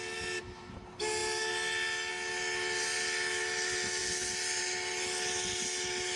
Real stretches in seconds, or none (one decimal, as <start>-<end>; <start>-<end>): 0.0-6.2